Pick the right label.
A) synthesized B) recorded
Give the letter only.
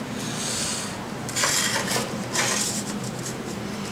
B